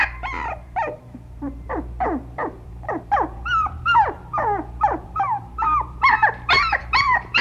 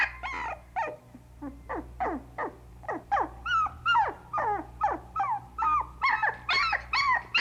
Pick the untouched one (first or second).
second